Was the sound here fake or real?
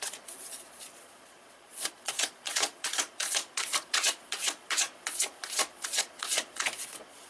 fake